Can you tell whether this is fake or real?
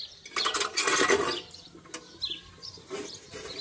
real